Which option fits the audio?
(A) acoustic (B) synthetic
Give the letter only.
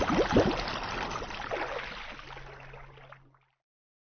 A